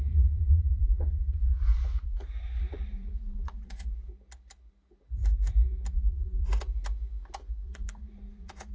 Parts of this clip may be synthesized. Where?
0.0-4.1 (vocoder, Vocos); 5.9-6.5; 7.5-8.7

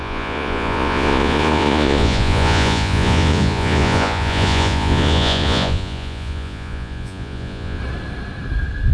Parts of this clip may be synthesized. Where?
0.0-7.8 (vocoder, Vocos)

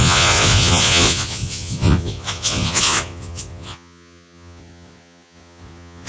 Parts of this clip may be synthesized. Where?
0.0-6.1 (vocoder, Vocos)